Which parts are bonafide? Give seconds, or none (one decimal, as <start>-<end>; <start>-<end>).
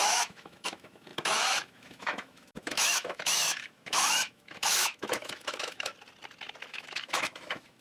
5.9-6.7